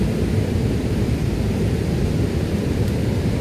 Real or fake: real